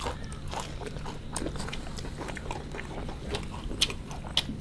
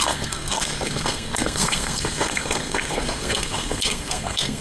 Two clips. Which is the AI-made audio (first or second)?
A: second